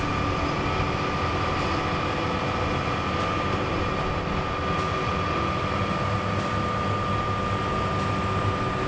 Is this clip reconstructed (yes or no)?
no